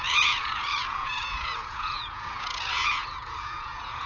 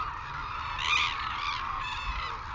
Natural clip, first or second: second